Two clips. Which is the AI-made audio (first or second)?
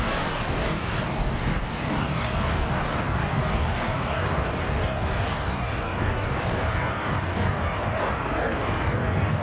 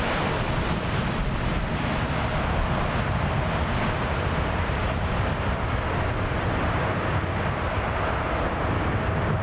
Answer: first